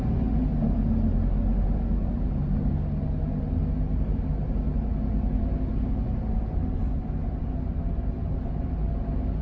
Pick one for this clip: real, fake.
real